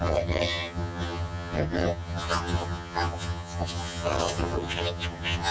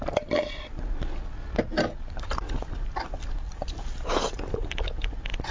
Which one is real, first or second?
second